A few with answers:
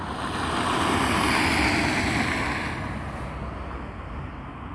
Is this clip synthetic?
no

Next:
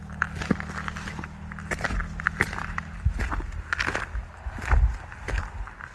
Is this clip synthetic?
no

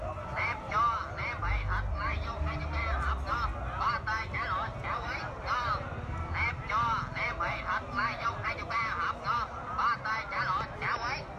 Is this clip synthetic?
no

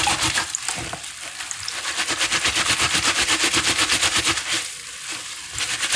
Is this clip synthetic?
no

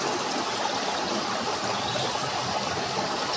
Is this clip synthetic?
no